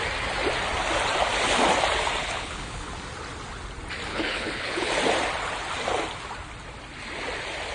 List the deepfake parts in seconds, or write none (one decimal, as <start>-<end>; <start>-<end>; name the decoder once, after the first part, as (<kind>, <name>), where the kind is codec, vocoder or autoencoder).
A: 2.2-2.9 (codec, HILCodec); 4.1-4.9